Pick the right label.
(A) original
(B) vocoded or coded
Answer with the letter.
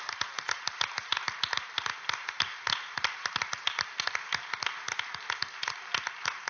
A